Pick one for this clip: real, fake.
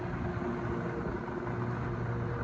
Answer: real